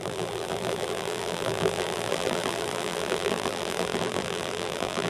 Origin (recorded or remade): remade